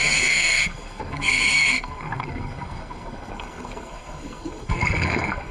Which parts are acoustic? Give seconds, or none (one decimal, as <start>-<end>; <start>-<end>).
none